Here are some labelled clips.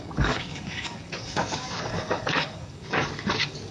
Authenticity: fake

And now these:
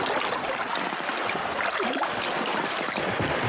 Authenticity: real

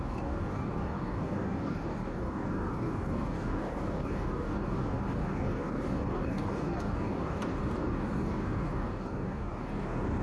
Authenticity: fake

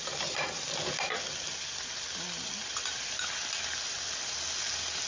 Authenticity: real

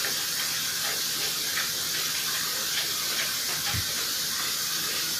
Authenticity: real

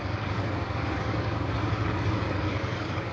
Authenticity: fake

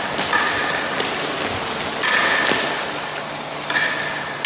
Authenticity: real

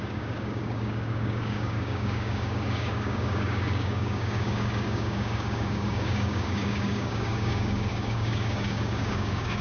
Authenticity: fake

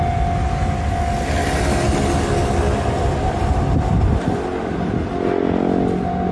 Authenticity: real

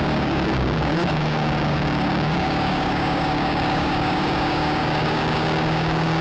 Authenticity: fake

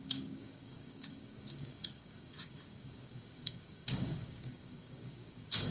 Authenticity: fake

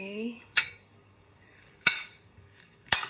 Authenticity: fake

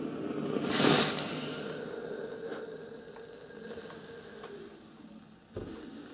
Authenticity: real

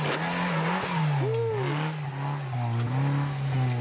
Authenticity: real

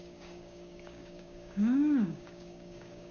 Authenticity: fake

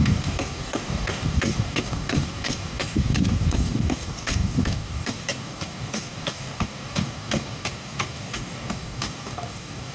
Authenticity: fake